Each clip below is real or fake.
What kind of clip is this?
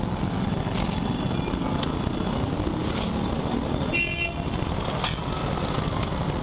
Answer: real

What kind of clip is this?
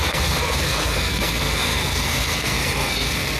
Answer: fake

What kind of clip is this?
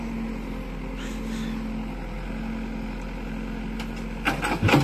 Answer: real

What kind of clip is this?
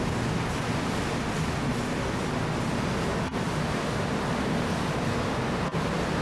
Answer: real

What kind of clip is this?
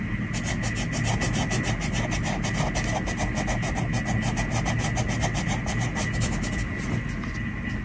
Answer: real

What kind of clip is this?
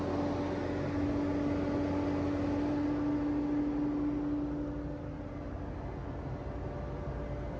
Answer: real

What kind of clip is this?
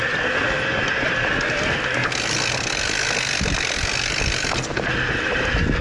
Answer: real